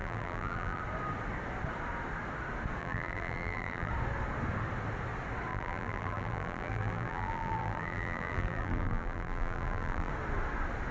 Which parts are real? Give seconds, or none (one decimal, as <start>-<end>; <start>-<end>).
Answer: 0.8-2.8; 3.9-5.5; 10.1-10.9

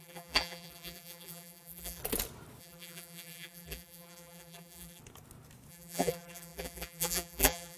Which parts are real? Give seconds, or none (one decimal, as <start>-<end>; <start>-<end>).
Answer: 2.0-2.6; 5.0-5.7

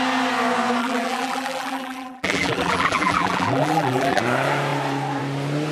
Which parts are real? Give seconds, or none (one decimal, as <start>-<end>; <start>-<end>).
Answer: 0.0-0.8; 4.2-5.7

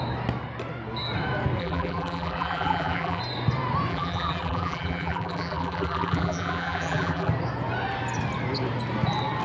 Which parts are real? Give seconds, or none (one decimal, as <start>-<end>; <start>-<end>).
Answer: 0.0-1.6; 3.2-3.9; 7.3-9.4

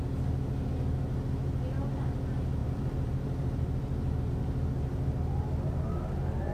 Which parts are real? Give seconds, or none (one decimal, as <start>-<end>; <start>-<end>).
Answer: 0.0-2.6; 4.3-6.5

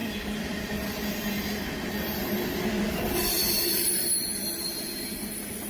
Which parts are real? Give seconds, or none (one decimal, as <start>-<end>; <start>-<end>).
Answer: 0.7-2.2

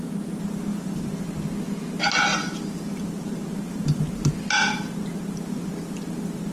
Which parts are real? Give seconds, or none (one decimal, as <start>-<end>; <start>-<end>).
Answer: 0.0-0.7; 1.2-2.3; 4.3-6.5

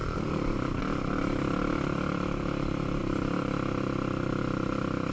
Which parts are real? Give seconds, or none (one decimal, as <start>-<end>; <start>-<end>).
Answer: 0.8-5.1